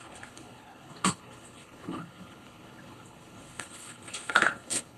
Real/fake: fake